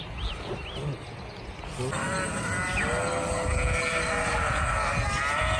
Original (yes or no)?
yes